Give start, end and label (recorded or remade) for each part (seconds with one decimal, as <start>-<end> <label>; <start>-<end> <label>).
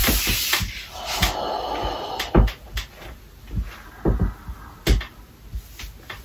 0.0-6.2 recorded